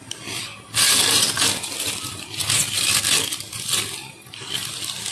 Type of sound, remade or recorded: recorded